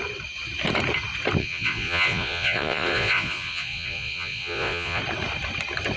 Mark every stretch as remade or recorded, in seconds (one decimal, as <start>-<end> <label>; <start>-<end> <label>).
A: 0.0-1.4 recorded; 1.4-5.0 remade; 5.0-6.0 recorded